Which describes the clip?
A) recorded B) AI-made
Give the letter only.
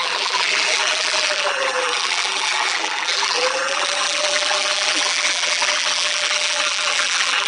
B